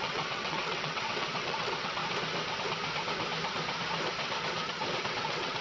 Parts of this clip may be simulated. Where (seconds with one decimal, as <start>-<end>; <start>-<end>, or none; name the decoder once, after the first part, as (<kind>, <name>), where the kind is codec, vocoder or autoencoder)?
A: 0.0-2.0 (vocoder, WaveNeXt); 5.0-5.6